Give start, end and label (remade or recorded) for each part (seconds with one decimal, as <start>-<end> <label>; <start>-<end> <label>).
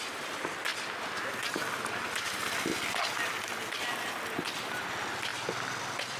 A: 0.0-0.7 remade; 0.7-2.0 recorded; 2.0-5.3 remade; 5.3-5.8 recorded; 5.8-6.2 remade